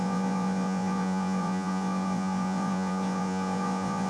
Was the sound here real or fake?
fake